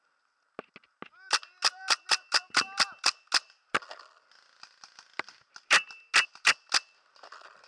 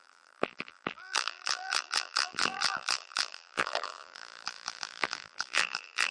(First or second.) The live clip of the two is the first